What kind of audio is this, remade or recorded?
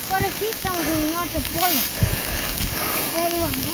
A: remade